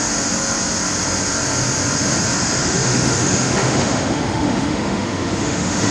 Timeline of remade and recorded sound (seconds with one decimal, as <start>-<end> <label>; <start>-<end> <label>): 0.0-2.6 recorded; 2.6-5.9 remade